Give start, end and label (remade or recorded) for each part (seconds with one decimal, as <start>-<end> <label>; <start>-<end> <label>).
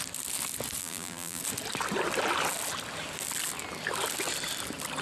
0.0-0.8 recorded; 0.8-1.4 remade; 1.4-5.0 recorded